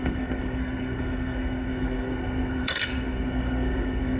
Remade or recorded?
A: remade